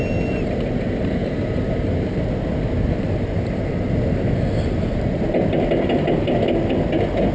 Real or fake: real